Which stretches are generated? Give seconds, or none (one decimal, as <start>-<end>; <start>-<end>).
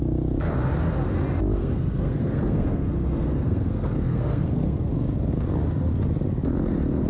1.6-4.9